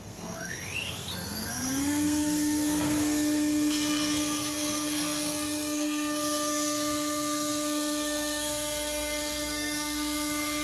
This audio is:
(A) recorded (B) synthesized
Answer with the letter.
B